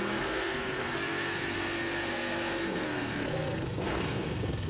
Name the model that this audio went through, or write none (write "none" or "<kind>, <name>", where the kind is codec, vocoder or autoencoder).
codec, SNAC